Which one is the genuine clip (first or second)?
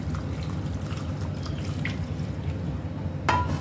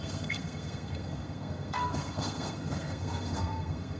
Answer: first